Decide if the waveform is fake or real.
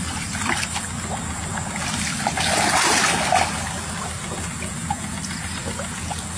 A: real